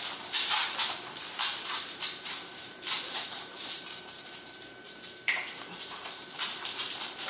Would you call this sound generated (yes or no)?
yes